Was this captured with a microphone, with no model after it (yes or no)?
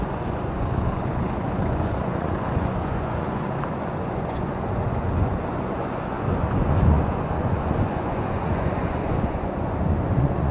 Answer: no